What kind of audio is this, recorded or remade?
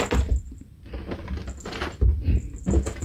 recorded